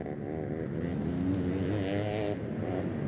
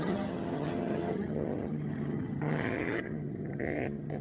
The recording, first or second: first